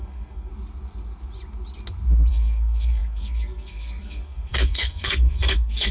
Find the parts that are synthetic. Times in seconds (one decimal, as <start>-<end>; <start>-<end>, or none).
0.0-0.5; 2.3-5.9